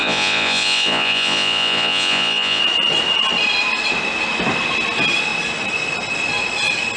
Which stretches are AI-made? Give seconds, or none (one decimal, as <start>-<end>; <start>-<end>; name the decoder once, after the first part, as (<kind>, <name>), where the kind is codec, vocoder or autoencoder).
0.0-2.6 (vocoder, Vocos)